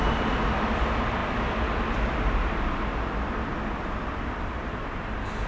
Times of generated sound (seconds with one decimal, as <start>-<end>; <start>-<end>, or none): 0.0-5.5